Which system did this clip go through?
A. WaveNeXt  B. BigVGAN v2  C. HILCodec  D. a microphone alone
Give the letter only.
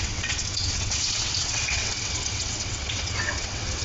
A